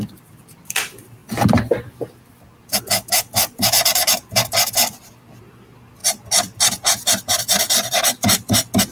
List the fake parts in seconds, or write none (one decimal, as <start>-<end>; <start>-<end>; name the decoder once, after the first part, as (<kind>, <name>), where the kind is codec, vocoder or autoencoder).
0.0-1.2 (vocoder, BigVGAN v2); 2.8-8.9